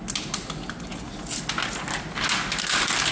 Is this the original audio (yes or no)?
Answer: yes